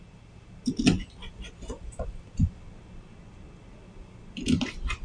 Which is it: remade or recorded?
recorded